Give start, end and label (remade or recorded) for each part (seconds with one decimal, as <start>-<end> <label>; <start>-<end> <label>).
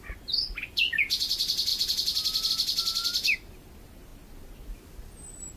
0.0-5.6 recorded